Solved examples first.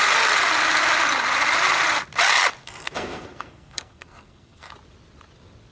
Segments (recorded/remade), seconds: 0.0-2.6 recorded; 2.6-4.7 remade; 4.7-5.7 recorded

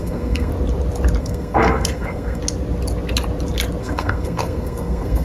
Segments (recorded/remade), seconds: 0.0-0.5 remade; 0.5-1.2 recorded; 1.2-2.4 remade; 2.4-3.8 recorded; 3.8-5.2 remade

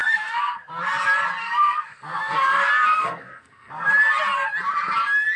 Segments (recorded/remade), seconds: 0.0-0.7 remade; 0.7-1.4 recorded; 1.4-3.9 remade; 3.9-5.4 recorded

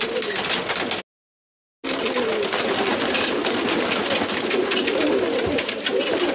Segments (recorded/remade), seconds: 0.0-6.3 recorded

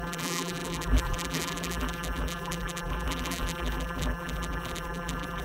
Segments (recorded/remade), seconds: 0.0-5.4 remade